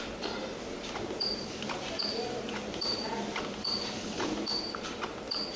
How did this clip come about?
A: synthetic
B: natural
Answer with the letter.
A